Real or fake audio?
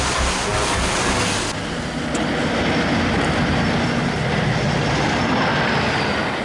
real